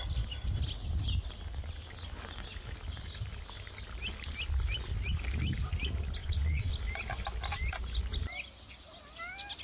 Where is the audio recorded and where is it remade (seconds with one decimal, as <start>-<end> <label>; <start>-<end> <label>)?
0.0-6.2 recorded; 6.2-6.7 remade; 6.7-9.6 recorded